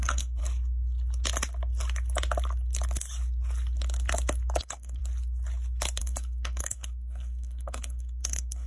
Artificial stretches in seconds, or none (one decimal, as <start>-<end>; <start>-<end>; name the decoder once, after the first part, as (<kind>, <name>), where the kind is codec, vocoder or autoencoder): 0.0-0.4 (codec, SNAC); 4.6-5.0; 6.0-8.7